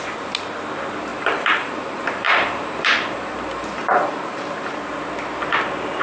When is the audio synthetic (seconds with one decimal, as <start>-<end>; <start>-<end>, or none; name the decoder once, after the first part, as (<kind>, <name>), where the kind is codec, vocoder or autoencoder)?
1.1-4.7 (vocoder, BigVGAN v2)